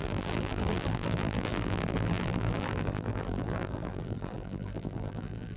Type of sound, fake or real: fake